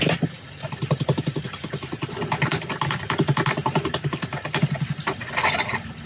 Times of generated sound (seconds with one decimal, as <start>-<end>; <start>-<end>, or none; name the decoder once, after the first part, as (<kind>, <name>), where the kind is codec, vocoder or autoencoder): none